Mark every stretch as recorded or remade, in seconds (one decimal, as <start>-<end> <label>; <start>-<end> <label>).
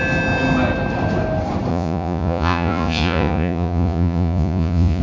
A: 0.0-1.7 recorded; 1.7-5.0 remade